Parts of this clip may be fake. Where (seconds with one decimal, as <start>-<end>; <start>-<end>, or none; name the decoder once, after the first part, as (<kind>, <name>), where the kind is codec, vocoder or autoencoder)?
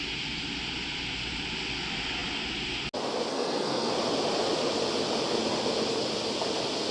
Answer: 3.3-3.9 (codec, SNAC)